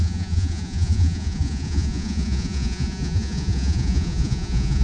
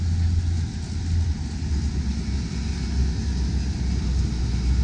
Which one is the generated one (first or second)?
first